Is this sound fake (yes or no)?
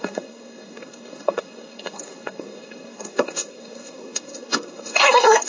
yes